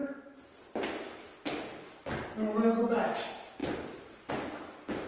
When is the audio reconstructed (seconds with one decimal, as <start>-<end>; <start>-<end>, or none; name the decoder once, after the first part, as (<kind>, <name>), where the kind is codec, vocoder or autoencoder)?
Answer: 2.8-5.1 (vocoder, BigVGAN v2)